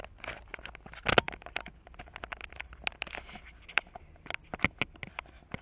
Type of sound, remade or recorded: recorded